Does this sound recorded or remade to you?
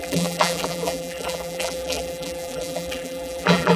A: remade